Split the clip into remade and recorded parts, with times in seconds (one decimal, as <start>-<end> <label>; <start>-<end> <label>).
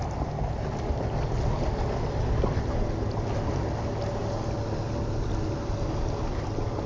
0.0-6.9 recorded